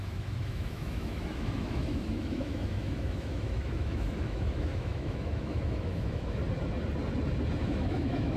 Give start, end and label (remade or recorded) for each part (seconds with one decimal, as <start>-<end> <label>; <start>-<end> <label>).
0.0-6.4 remade; 6.4-7.6 recorded; 7.6-8.4 remade